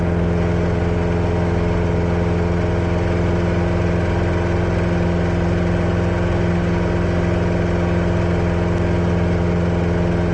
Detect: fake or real real